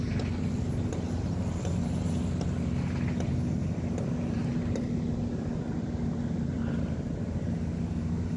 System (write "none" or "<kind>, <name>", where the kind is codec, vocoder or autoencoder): none